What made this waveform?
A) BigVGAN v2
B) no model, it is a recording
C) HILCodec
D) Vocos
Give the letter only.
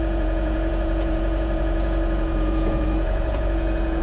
D